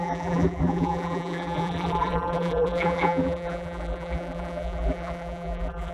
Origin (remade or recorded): remade